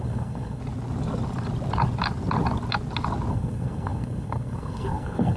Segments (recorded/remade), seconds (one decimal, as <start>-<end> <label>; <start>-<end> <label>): 0.0-0.6 remade; 0.6-3.3 recorded; 3.3-5.4 remade